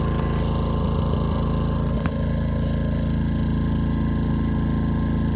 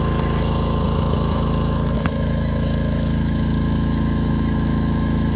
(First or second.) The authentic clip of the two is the first